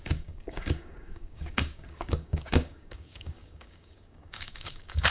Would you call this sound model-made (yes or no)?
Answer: yes